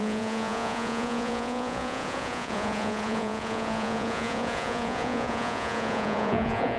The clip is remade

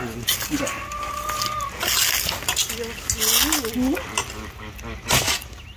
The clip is recorded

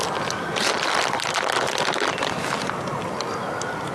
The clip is recorded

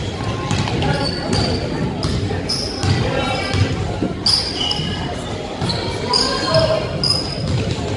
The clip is recorded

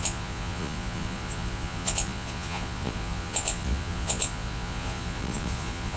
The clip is remade